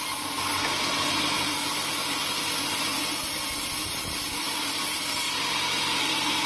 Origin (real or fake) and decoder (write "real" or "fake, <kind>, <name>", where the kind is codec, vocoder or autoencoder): real